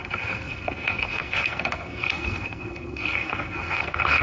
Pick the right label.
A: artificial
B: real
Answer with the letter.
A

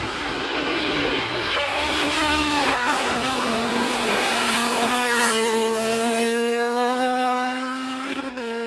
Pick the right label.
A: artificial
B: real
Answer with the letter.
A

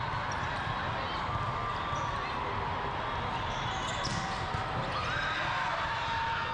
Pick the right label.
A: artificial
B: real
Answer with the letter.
B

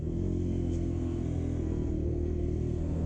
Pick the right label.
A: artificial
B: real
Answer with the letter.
A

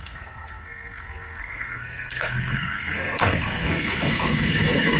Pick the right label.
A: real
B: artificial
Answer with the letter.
B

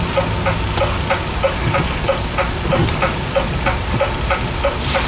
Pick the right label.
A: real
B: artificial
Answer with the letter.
A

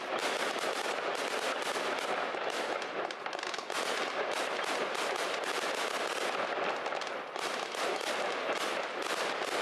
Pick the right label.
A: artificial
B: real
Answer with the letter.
B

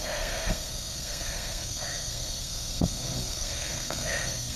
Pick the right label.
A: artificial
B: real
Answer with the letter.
A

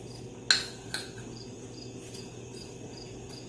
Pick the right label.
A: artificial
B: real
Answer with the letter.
B